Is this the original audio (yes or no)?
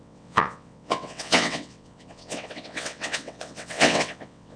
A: no